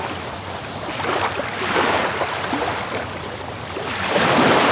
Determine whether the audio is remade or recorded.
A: remade